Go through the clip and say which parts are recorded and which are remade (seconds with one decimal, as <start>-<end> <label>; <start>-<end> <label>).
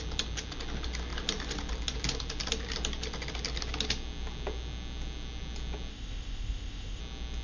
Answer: 0.0-5.9 recorded; 5.9-7.0 remade; 7.0-7.4 recorded